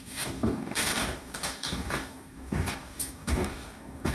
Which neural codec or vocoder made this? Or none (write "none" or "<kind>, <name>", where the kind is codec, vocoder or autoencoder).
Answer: codec, DAC